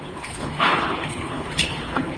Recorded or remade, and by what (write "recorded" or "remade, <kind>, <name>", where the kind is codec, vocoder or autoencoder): remade, codec, HILCodec